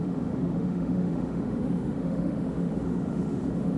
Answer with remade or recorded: remade